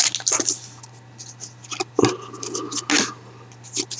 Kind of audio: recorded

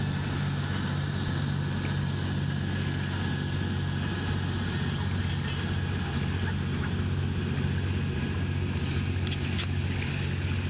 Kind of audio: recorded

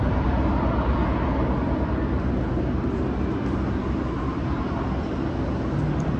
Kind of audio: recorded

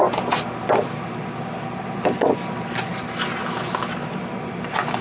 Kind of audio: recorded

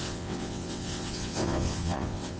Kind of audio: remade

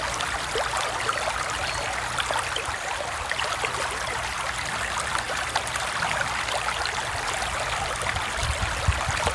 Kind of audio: recorded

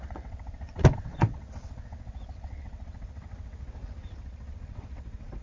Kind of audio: remade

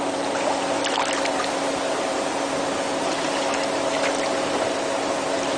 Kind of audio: recorded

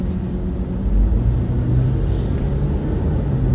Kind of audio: recorded